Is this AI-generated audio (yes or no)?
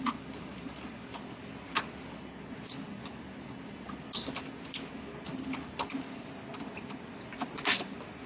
no